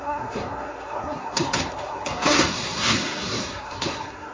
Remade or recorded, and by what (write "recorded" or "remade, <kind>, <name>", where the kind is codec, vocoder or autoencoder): remade, codec, SNAC